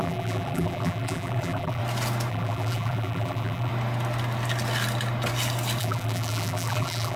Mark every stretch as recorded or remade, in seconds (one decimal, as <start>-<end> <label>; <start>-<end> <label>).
0.0-1.8 remade; 1.8-2.3 recorded; 2.3-3.7 remade; 3.7-5.8 recorded; 5.8-7.2 remade